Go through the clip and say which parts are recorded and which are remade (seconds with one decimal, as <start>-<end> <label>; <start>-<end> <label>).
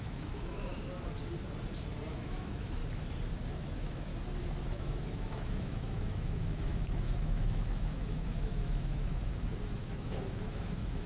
0.0-0.7 remade; 0.7-2.1 recorded; 2.1-2.8 remade; 2.8-3.5 recorded; 3.5-4.1 remade; 4.1-4.7 recorded; 4.7-11.1 remade